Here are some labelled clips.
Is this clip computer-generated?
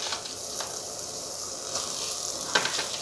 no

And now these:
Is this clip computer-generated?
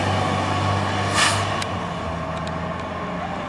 no